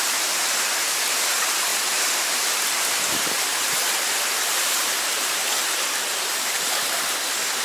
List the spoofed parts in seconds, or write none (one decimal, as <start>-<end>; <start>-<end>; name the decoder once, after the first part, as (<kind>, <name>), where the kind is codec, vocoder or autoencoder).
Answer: 0.0-5.4 (vocoder, BigVGAN v2); 6.1-7.6